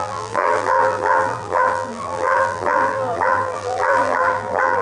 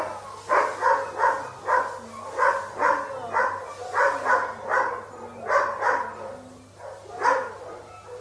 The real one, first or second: second